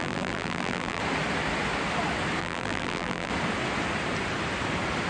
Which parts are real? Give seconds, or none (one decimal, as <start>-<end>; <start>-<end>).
1.0-2.4; 3.3-5.1